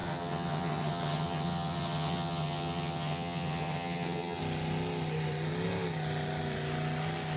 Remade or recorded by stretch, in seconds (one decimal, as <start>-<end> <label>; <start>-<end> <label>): 0.0-4.4 remade; 4.4-7.4 recorded